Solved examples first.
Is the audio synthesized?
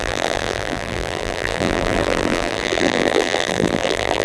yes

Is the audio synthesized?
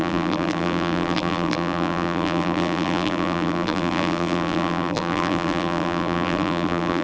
yes